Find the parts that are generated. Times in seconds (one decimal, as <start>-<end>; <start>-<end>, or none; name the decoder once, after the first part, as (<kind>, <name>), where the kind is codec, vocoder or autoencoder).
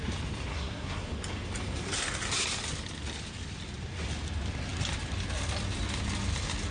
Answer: 0.5-1.1 (codec, SNAC)